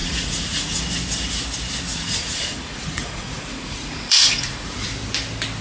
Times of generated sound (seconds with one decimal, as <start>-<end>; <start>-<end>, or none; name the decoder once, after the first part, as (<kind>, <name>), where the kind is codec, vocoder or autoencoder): 0.0-0.8 (vocoder, Vocos); 1.9-4.9